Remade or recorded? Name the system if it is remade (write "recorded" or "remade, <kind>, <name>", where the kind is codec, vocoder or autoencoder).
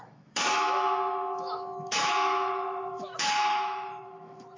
remade, autoencoder, DAC-VAE